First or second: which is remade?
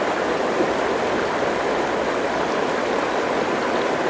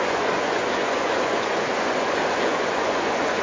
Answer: second